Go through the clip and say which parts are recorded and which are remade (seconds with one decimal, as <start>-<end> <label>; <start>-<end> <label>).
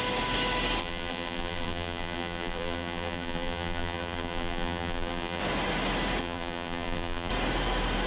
0.0-0.8 recorded; 0.8-5.4 remade; 5.4-6.2 recorded; 6.2-7.3 remade; 7.3-8.1 recorded